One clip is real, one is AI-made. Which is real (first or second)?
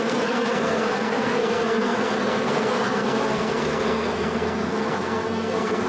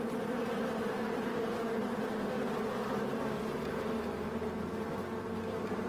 second